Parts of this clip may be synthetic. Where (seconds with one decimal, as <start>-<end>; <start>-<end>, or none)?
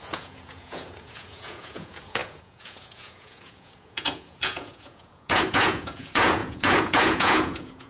0.0-7.9